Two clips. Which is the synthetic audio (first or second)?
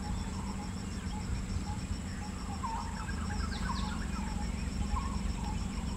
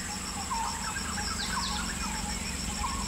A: first